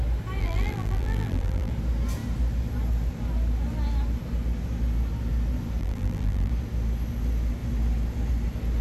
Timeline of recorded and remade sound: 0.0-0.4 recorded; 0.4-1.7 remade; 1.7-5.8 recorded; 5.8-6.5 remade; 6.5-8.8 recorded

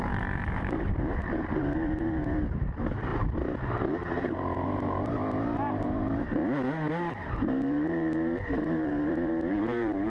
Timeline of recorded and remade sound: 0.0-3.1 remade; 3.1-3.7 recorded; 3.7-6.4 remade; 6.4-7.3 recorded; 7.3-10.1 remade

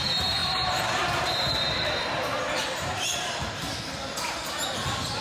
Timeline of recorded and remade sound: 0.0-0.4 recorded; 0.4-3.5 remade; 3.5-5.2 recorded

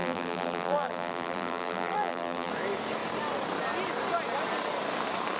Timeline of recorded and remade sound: 0.0-2.5 remade; 2.5-5.4 recorded